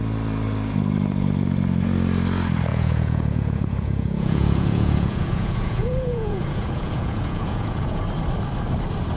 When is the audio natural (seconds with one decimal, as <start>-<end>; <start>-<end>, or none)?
0.0-2.7; 8.0-9.2